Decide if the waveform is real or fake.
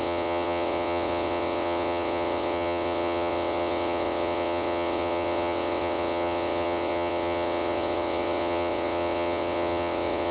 fake